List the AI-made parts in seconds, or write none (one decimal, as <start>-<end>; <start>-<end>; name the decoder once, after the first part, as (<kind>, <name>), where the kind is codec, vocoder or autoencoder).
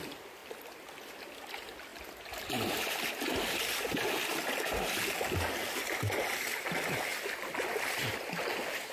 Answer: none